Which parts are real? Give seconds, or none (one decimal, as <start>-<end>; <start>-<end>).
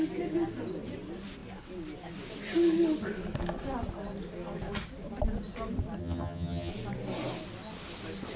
0.0-6.0; 6.7-8.4